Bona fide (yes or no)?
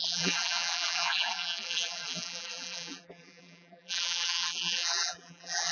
no